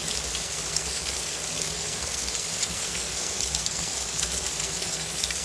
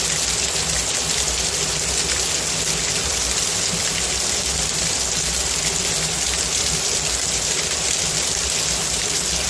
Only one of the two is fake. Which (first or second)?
first